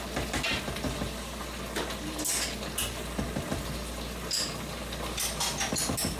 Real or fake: real